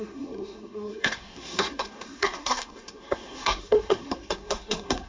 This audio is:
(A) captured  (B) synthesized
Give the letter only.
B